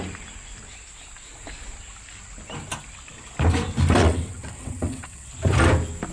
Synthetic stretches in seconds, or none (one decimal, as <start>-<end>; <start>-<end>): 4.0-5.3